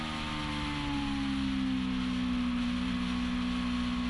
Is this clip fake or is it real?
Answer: real